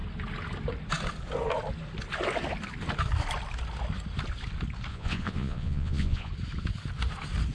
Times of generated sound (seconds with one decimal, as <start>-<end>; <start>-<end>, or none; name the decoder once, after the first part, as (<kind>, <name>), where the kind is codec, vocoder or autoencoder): 4.9-6.3 (vocoder, Vocos)